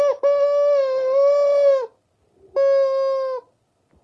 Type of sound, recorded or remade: recorded